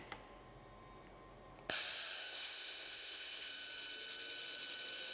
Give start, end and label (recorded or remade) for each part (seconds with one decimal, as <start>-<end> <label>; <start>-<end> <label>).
0.0-2.2 recorded; 2.2-3.5 remade; 3.5-5.1 recorded